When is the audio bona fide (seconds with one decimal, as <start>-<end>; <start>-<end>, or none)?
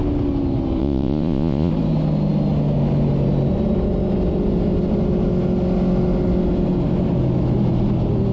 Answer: 0.0-0.8; 1.7-8.3